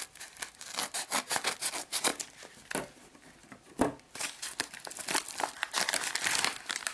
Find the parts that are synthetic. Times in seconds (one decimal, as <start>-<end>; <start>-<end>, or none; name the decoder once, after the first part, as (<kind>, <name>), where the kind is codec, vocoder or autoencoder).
none